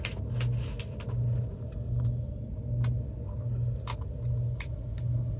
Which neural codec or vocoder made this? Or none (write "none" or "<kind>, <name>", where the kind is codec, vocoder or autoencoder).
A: none